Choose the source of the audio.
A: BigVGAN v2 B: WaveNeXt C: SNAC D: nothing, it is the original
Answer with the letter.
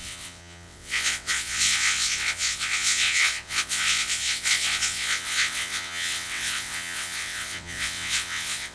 B